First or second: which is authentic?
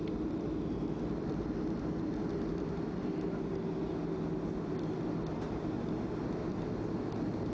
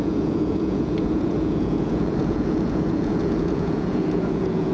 first